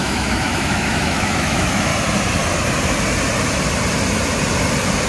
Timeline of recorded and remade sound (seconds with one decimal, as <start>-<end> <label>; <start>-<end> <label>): 0.0-1.9 remade; 1.9-5.1 recorded

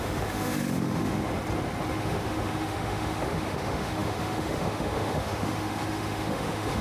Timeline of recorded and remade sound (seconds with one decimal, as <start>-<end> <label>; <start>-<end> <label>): 0.0-1.3 remade; 1.3-1.9 recorded; 1.9-6.8 remade